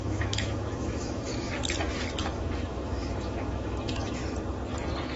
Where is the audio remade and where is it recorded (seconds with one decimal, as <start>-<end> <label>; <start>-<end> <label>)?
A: 0.0-1.3 remade; 1.3-2.4 recorded; 2.4-4.2 remade; 4.2-5.2 recorded